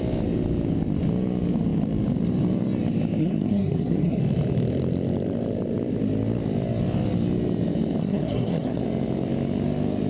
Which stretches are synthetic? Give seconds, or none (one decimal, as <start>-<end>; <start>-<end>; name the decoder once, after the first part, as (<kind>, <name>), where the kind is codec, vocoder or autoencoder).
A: 3.2-4.2 (codec, SNAC); 8.0-8.8